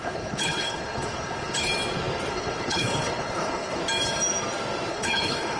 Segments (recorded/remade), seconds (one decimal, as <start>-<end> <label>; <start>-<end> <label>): 0.0-1.7 remade; 1.7-2.3 recorded; 2.3-3.8 remade; 3.8-4.9 recorded; 4.9-5.6 remade